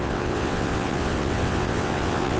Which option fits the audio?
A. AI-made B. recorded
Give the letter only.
A